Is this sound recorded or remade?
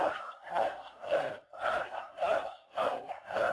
remade